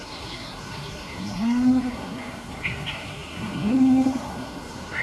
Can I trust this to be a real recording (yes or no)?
no